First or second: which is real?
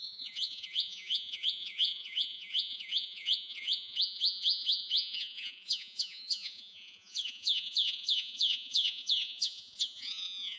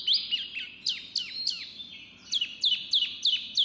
second